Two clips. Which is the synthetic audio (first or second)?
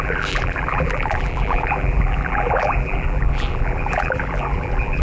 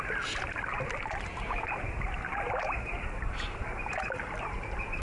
first